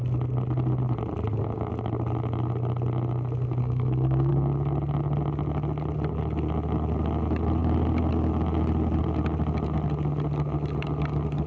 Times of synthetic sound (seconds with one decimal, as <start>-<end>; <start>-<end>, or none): 3.6-4.3